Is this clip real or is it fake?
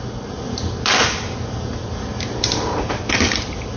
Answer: real